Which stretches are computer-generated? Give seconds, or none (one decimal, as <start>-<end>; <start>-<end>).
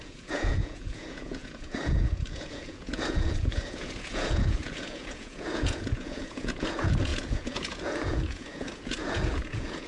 0.0-9.9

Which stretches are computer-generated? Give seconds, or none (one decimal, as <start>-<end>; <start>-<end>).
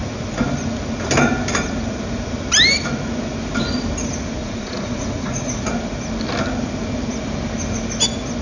4.4-5.6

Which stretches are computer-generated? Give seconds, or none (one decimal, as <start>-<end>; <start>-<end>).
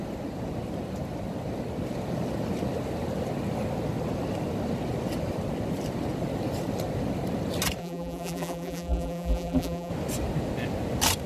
7.8-9.9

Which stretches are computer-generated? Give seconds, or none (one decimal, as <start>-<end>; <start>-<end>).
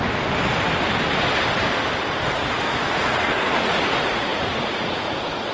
2.3-5.5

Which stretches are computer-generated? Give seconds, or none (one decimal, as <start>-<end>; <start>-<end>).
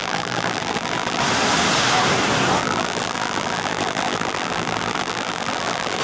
0.0-1.2; 2.6-6.0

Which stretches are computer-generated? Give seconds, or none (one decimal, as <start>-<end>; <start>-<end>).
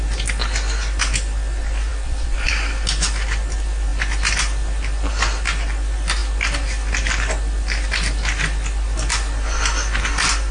1.9-2.5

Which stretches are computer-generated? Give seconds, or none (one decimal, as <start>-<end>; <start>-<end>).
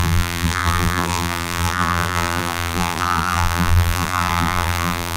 0.0-5.2